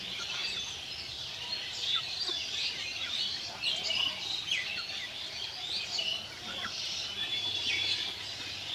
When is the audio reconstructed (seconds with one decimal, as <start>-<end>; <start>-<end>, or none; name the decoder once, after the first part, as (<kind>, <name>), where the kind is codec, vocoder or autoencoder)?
7.3-7.9 (vocoder, BigVGAN v2)